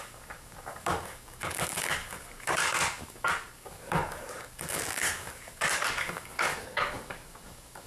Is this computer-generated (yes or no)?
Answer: yes